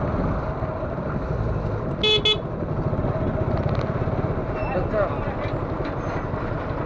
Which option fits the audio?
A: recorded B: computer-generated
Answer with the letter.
A